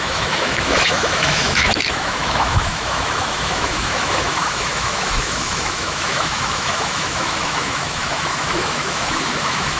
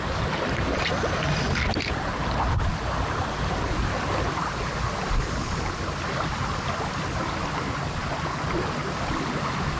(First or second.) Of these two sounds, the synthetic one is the first